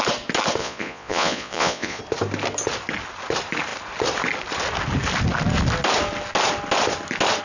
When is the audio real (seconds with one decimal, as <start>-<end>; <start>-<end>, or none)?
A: 0.0-0.6; 2.0-7.4